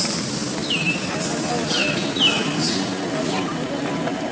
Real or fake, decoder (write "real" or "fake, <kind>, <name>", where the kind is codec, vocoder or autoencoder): real